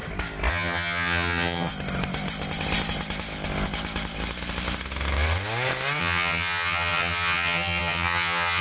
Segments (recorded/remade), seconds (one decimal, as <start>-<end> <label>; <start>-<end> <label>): 0.0-0.5 recorded; 0.5-1.7 remade; 1.7-6.0 recorded; 6.0-8.6 remade

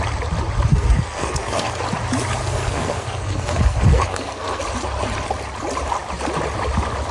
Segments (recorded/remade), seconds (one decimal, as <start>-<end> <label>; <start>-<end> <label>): 0.0-0.7 recorded; 0.7-1.7 remade; 1.7-2.4 recorded; 2.4-4.6 remade; 4.6-7.1 recorded

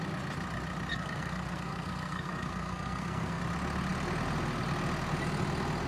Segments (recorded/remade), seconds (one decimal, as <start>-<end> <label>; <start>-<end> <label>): 0.0-0.9 recorded; 0.9-3.4 remade; 3.4-5.9 recorded

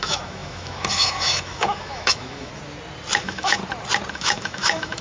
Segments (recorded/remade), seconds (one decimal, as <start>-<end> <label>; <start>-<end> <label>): 0.0-2.5 remade; 2.5-3.2 recorded; 3.2-3.6 remade; 3.6-4.1 recorded; 4.1-5.0 remade

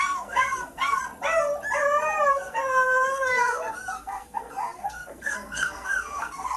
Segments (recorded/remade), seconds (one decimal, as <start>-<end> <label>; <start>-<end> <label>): 0.0-1.0 remade; 1.0-2.3 recorded; 2.3-6.6 remade